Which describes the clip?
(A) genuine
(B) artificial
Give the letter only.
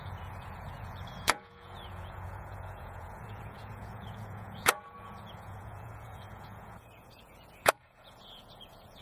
B